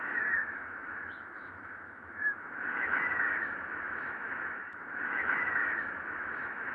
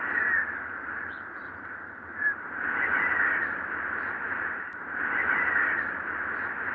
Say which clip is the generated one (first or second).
first